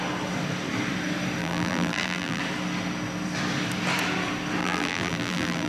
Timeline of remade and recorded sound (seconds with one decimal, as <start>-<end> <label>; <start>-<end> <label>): 0.0-1.4 recorded; 1.4-2.4 remade; 2.4-4.6 recorded; 4.6-5.7 remade